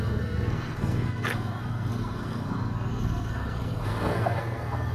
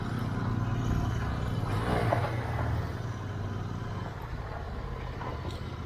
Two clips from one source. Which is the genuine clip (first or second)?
second